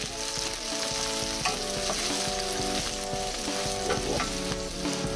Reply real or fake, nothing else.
real